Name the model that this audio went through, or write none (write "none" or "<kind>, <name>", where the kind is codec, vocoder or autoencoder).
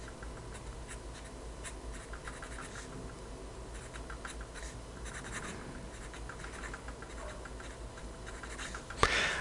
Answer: none